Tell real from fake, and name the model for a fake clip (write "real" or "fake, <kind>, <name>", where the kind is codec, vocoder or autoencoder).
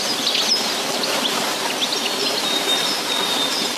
real